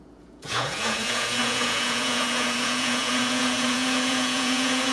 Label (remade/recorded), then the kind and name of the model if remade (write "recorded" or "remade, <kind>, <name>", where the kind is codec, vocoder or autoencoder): remade, vocoder, Vocos